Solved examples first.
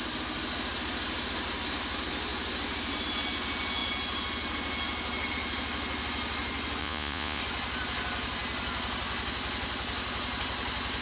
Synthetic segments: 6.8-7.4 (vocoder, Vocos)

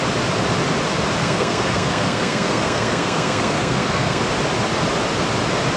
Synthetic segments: 1.2-4.2 (codec, SNAC)

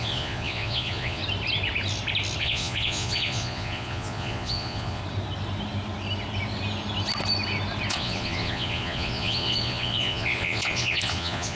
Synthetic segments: 0.0-1.2 (vocoder, Vocos); 2.4-5.0; 7.9-11.6

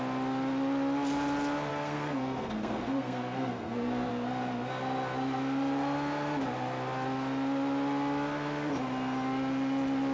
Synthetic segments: 1.7-4.1 (codec, SNAC)

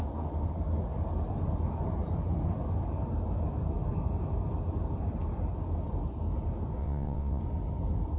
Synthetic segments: 6.8-7.4 (vocoder, WaveNeXt)